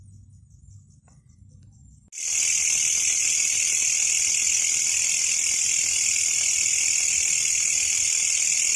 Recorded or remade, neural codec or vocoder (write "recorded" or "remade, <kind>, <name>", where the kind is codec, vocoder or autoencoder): recorded